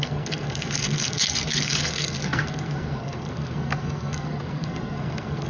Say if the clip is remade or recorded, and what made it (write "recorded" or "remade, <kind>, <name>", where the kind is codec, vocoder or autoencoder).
remade, codec, SNAC